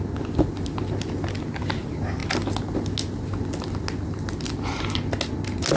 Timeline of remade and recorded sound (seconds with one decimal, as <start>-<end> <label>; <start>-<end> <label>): 0.0-5.8 recorded